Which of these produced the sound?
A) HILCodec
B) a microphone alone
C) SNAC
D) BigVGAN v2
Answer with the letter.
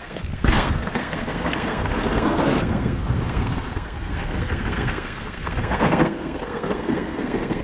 C